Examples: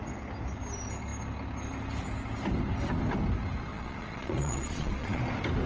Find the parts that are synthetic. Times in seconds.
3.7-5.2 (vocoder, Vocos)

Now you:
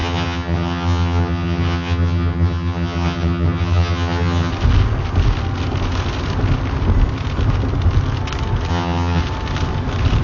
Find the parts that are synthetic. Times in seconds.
0.0-4.5 (vocoder, HiFi-GAN); 8.7-9.2

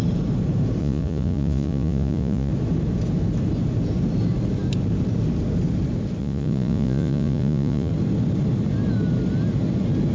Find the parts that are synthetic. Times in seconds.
0.8-2.5 (vocoder, Vocos); 6.2-7.9